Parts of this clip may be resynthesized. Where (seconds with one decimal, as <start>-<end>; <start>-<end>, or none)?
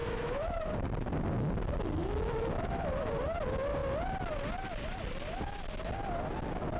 0.0-0.7; 2.0-3.1